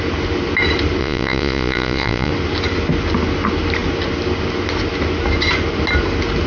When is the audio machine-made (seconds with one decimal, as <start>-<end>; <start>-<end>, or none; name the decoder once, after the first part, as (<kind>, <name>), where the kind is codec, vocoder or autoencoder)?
1.0-2.3 (vocoder, Vocos)